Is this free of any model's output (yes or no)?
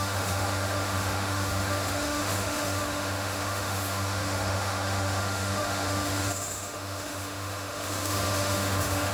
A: no